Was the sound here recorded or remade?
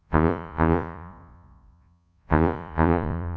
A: remade